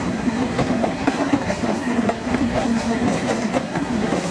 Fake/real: fake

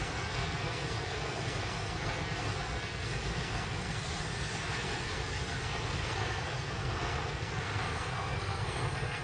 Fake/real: fake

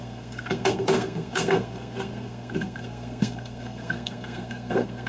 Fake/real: fake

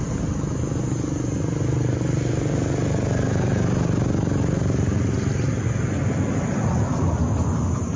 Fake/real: real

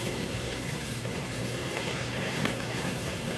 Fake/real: fake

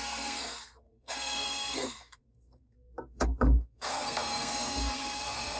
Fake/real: fake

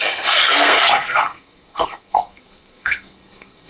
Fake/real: fake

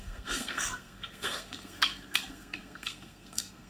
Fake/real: fake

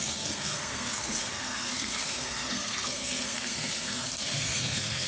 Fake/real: fake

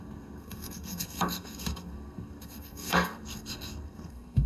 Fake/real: fake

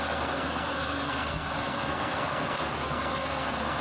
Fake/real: fake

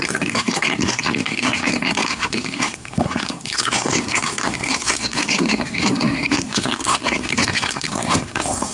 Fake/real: fake